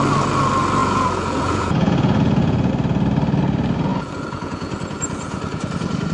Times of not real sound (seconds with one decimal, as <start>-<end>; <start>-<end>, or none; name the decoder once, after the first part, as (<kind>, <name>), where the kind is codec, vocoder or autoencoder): 0.8-2.7 (vocoder, Vocos); 3.9-6.1